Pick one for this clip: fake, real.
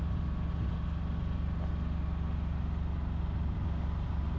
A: real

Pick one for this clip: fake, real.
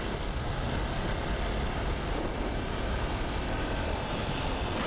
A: real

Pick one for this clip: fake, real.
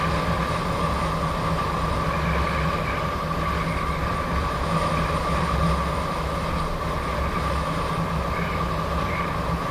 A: real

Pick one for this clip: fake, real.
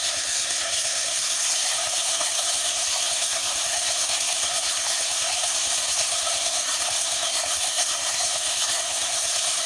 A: fake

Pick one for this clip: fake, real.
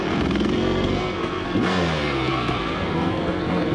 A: fake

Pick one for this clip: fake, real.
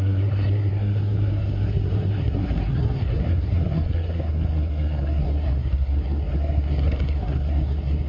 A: fake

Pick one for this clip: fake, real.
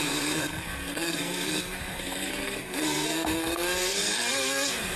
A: fake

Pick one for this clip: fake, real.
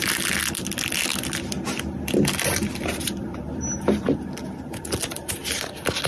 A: real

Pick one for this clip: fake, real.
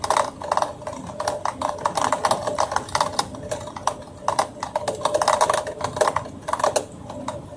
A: real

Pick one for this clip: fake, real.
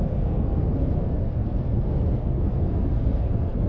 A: fake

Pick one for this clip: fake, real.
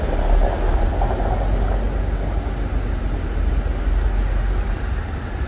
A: real